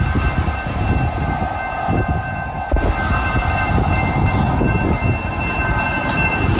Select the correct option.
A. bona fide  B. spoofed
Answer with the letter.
A